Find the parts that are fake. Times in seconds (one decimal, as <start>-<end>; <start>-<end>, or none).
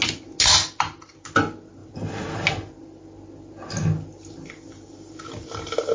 none